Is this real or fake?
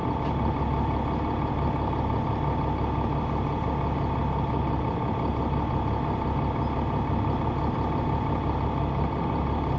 real